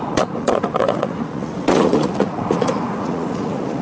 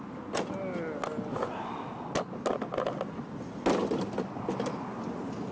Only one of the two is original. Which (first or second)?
second